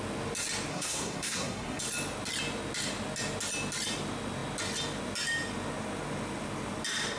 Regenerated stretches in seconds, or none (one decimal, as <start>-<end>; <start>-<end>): 0.7-1.8